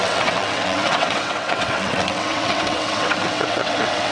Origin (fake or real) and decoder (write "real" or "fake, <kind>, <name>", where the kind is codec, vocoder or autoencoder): fake, vocoder, WaveNeXt